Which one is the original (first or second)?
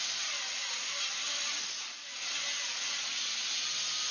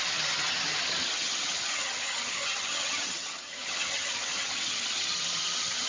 first